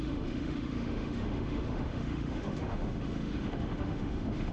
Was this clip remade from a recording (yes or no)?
yes